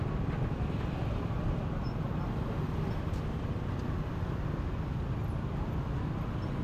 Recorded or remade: recorded